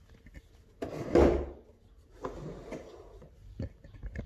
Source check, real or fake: real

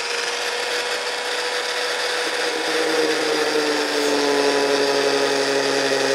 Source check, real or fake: real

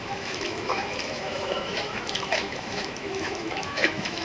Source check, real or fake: fake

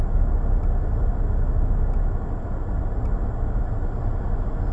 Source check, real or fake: real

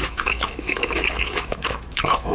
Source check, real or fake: fake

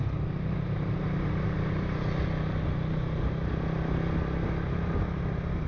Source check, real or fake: real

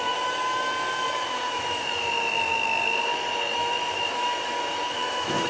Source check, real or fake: fake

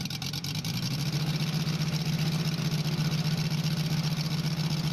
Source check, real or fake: real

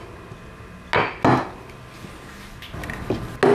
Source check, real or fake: real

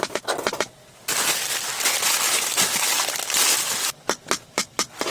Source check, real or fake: real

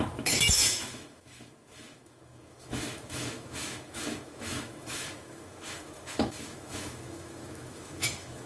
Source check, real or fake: fake